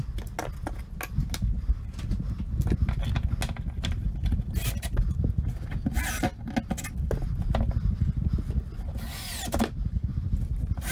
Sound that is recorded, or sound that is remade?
recorded